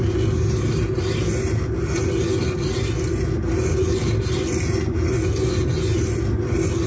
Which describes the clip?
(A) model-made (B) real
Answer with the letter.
B